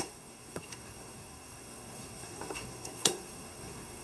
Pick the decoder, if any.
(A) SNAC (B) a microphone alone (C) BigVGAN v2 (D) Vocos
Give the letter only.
A